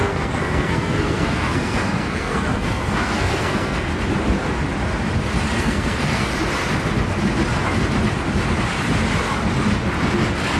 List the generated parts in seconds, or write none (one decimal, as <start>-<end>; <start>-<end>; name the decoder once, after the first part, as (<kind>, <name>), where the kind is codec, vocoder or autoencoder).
0.0-3.9 (codec, SNAC); 5.6-6.3